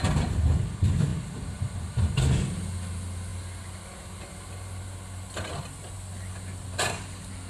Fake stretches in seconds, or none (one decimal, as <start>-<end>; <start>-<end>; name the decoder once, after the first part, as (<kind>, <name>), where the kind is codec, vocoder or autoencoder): none